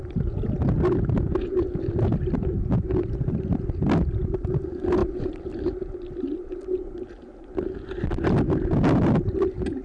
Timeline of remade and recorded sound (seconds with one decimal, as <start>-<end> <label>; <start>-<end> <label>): 0.0-9.8 recorded